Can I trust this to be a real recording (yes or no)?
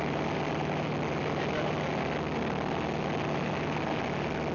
yes